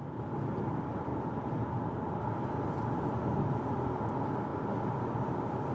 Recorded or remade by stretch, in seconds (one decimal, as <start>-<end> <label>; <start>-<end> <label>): 0.0-5.7 recorded

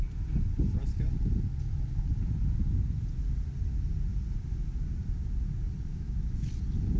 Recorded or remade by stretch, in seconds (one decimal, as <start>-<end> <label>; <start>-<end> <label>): 0.0-5.9 recorded; 5.9-6.5 remade; 6.5-7.0 recorded

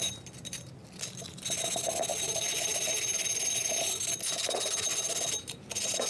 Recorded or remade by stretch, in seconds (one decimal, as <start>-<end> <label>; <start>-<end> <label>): 0.0-6.1 recorded